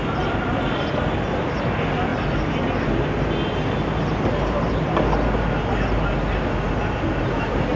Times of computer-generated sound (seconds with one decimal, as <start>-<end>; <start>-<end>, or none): none